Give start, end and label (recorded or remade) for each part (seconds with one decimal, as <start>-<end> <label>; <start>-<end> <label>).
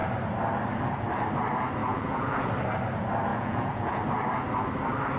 0.0-1.8 recorded; 1.8-2.5 remade; 2.5-3.3 recorded; 3.3-4.0 remade; 4.0-5.2 recorded